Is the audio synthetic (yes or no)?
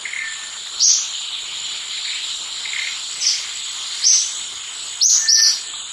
no